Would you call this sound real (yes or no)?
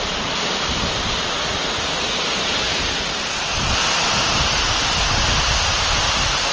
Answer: yes